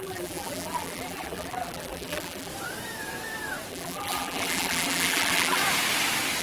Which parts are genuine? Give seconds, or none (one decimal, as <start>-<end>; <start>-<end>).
2.5-3.7; 5.6-6.4